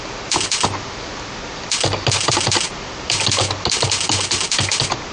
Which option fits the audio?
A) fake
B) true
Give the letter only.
B